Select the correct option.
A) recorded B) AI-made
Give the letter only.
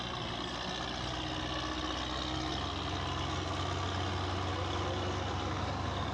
A